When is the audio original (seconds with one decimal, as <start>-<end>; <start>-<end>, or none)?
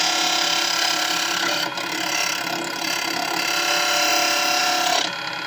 0.0-5.5